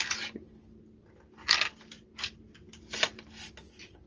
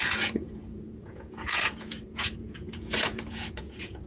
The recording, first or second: first